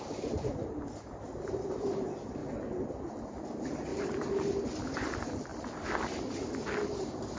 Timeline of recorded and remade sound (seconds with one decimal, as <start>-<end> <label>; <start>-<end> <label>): 0.0-2.4 remade; 2.4-3.4 recorded; 3.4-3.9 remade; 3.9-4.6 recorded; 4.6-5.5 remade; 5.5-7.4 recorded